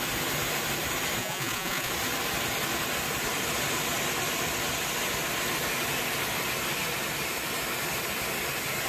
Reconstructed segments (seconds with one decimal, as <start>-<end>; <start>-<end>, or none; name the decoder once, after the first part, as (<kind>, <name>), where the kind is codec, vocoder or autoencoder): 1.2-1.9 (vocoder, Vocos)